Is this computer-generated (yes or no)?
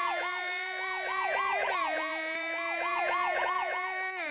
yes